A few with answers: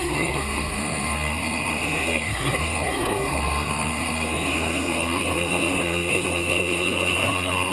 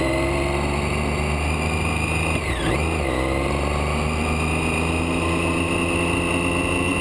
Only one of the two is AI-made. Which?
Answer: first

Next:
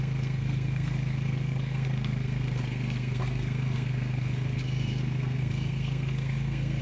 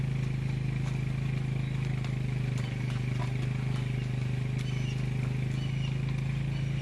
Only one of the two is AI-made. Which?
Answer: first